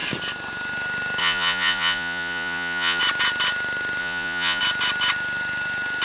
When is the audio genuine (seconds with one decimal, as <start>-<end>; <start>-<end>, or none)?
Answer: 0.0-1.2; 3.0-4.0; 4.6-6.0